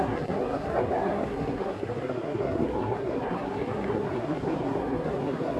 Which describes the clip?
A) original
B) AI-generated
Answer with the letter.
B